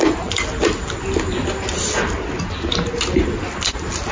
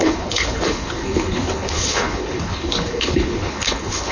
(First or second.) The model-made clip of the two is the second